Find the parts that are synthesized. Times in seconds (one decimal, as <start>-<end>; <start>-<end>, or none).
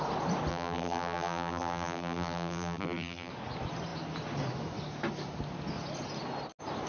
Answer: 0.5-3.3